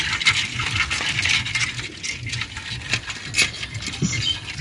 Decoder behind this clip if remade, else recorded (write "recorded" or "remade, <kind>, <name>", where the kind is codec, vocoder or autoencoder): recorded